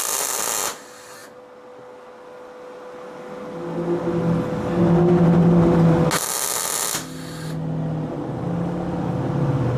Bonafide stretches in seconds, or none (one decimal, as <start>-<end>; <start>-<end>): 0.0-9.8